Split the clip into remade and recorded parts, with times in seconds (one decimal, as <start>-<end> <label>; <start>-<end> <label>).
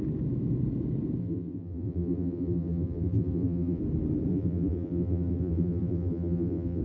0.0-1.2 recorded; 1.2-3.8 remade; 3.8-4.3 recorded; 4.3-6.8 remade